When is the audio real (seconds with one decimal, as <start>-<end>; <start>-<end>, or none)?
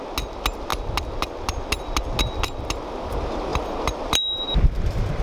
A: 0.0-5.2